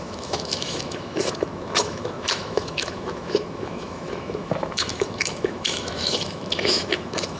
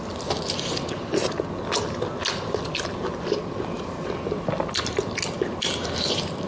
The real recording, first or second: second